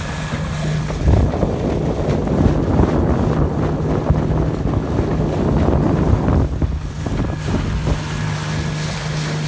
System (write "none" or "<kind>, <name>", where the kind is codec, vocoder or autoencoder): none